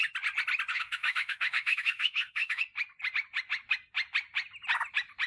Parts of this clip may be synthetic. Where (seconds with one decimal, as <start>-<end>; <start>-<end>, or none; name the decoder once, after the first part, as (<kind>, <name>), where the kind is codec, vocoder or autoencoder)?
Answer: 0.7-2.6 (autoencoder, DAC-VAE)